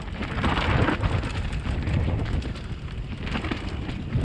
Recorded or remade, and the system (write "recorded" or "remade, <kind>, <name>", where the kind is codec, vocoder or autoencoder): recorded